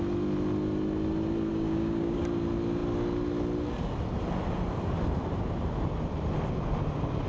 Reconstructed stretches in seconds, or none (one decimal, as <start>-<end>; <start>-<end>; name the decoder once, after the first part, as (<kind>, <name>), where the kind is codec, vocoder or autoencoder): 1.5-2.2 (codec, DAC)